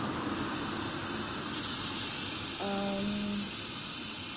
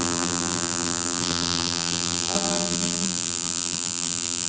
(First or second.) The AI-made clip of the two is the second